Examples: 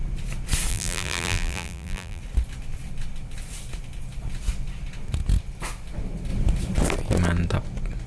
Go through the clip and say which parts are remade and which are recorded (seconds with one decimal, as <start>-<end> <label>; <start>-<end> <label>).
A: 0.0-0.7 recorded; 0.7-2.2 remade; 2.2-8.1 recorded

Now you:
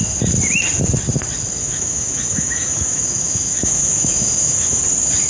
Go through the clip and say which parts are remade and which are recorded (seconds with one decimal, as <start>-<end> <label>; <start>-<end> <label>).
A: 0.0-1.6 recorded; 1.6-4.8 remade; 4.8-5.3 recorded

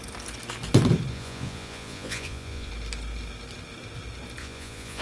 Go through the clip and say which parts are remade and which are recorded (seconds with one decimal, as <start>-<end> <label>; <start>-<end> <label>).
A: 0.0-1.1 recorded; 1.1-2.7 remade; 2.7-4.4 recorded; 4.4-5.0 remade